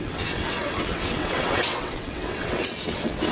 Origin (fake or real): fake